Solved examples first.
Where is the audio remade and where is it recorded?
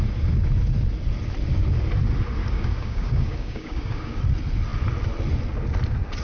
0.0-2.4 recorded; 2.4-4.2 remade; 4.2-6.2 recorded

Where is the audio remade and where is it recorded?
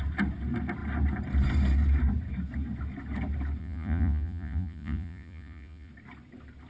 0.0-3.6 recorded; 3.6-5.9 remade; 5.9-6.7 recorded